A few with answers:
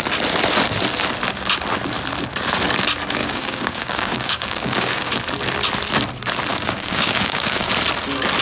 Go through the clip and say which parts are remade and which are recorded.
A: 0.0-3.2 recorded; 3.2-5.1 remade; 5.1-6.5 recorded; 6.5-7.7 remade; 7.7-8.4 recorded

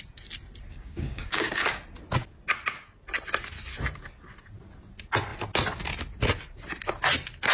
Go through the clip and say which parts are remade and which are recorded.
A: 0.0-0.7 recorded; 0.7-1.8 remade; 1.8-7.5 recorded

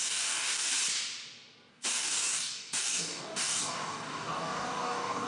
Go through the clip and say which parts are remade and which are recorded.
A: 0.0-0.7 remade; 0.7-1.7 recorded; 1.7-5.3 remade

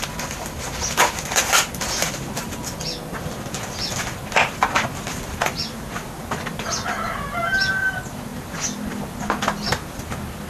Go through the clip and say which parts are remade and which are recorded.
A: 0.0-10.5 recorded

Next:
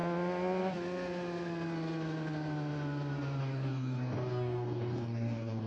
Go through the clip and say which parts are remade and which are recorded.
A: 0.0-3.4 recorded; 3.4-5.7 remade

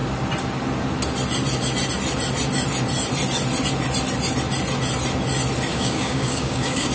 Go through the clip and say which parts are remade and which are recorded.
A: 0.0-5.7 recorded; 5.7-6.9 remade